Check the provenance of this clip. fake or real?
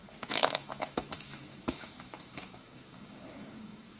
fake